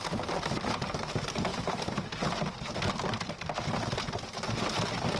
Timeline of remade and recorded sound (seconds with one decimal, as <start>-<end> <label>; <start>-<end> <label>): 0.0-5.2 recorded